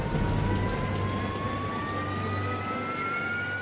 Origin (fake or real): real